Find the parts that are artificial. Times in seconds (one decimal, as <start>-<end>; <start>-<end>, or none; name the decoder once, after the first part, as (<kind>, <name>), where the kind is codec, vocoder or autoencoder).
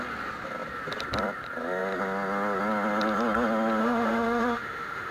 3.8-5.1 (autoencoder, DAC-VAE)